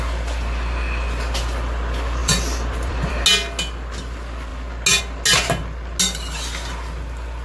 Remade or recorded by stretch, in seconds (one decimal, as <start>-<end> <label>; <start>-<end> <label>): 0.0-2.2 recorded; 2.2-3.1 remade; 3.1-7.4 recorded